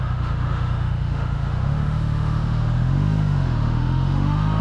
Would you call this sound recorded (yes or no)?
no